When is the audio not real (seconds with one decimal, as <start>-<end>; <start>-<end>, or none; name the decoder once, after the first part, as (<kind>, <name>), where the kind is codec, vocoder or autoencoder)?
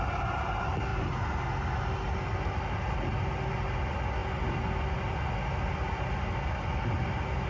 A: none